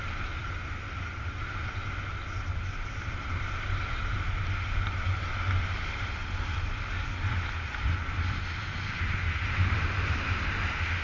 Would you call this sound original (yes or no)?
yes